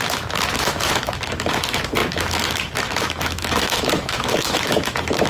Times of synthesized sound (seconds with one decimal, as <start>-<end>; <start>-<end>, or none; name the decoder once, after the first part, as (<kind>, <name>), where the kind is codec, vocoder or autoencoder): 0.0-5.3 (autoencoder, DAC-VAE)